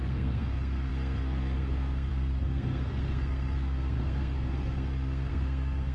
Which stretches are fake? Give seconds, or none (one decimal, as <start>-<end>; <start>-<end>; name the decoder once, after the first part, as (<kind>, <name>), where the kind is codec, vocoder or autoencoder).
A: 0.0-5.9 (codec, SNAC)